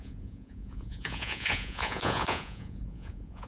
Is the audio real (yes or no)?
no